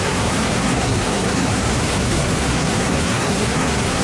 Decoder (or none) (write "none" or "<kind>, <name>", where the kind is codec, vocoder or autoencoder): codec, SNAC